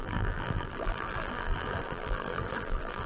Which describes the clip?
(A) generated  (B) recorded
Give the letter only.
A